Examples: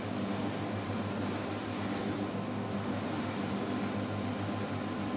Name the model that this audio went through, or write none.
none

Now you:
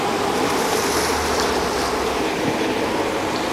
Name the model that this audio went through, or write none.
none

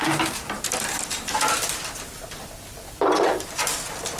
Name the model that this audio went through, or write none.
none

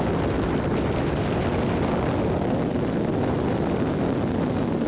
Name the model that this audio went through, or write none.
none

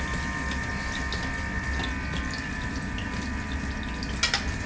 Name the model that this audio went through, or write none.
none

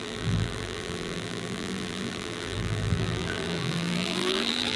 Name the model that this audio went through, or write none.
vocoder, BigVGAN v2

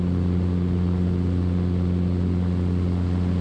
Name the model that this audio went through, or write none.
none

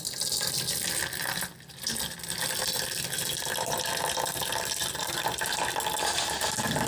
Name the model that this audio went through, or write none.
none